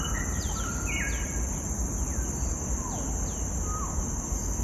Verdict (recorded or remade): recorded